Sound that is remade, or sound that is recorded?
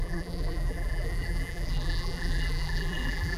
remade